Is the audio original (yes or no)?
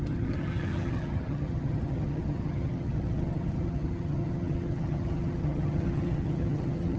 no